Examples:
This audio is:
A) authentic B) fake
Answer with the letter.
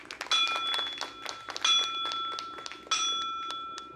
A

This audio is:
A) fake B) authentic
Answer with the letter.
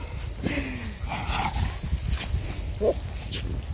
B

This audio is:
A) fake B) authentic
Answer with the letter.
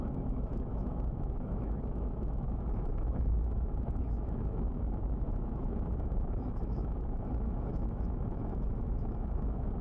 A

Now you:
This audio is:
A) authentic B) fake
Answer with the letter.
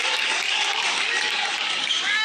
B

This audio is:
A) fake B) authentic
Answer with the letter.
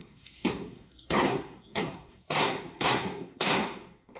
A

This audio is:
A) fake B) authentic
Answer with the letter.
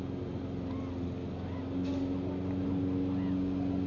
B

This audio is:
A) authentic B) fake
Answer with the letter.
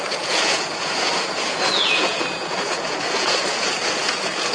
B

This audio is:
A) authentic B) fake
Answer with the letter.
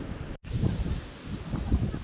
A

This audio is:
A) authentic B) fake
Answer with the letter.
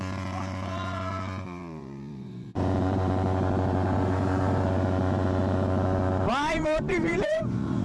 B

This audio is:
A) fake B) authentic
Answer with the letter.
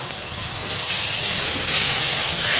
A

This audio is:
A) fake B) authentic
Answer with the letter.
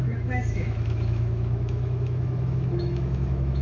A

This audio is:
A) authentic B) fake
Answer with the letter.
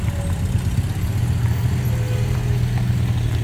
A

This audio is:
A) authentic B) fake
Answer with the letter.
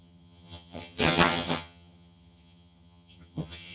B